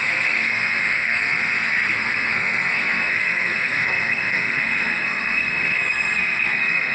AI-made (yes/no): yes